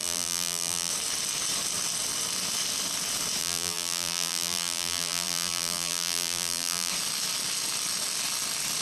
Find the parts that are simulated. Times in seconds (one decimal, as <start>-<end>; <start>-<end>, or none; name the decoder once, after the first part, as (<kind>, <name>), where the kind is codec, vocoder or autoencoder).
0.0-0.9 (vocoder, BigVGAN v2); 3.4-6.9